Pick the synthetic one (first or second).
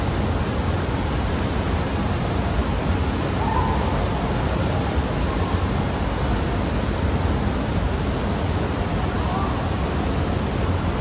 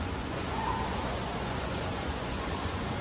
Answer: second